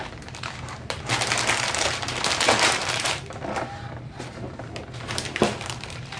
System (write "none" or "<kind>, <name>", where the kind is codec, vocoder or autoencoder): vocoder, BigVGAN v2